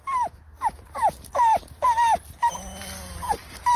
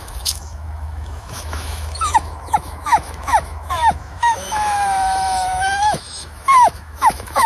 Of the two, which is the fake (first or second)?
second